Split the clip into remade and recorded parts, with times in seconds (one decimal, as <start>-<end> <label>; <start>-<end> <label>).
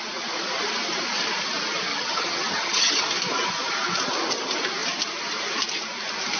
0.0-1.9 recorded; 1.9-3.0 remade; 3.0-6.4 recorded